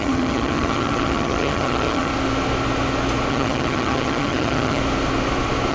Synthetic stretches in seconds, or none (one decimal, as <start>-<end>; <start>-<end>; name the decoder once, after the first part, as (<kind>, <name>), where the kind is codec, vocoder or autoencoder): 0.0-2.1 (vocoder, HiFi-GAN); 3.3-4.8